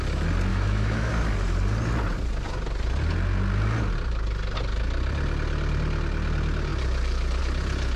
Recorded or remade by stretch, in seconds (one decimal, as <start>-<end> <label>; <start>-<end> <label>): 0.0-0.5 recorded; 0.5-1.1 remade; 1.1-8.0 recorded